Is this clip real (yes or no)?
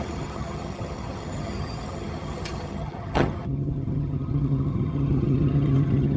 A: no